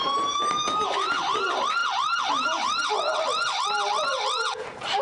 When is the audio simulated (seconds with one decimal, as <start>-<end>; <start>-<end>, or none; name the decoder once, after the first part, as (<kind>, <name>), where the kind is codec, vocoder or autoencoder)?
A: 0.0-0.5 (vocoder, BigVGAN v2); 1.8-2.9